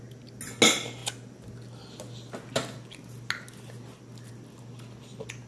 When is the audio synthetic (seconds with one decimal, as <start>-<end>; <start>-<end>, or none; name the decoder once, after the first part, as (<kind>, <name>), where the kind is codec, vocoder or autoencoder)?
none